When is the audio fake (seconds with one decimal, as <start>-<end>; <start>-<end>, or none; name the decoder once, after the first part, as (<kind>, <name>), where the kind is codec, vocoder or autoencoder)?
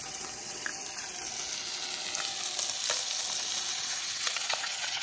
0.0-0.7 (vocoder, WaveNeXt); 3.7-5.0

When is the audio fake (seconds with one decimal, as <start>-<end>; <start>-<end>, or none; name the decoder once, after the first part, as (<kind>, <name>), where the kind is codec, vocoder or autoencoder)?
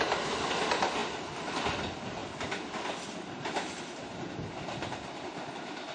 none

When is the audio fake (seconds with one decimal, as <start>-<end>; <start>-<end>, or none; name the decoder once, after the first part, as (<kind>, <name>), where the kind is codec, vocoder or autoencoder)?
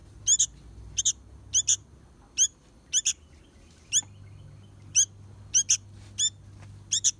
none